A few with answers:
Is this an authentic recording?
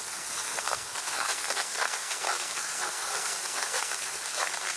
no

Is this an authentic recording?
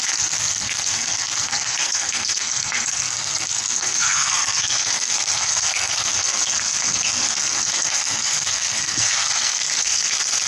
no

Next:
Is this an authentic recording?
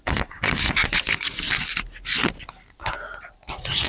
yes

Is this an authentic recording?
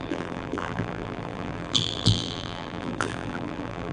no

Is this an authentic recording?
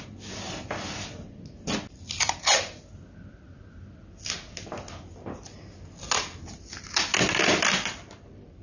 yes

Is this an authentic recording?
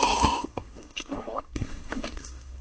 no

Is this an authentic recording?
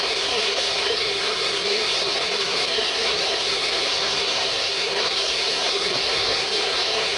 no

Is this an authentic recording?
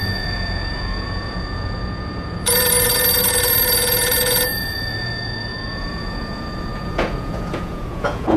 no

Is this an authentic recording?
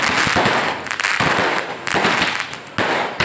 yes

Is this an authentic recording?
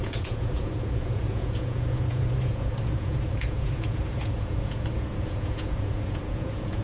no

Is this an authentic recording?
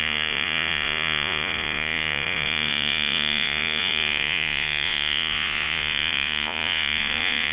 no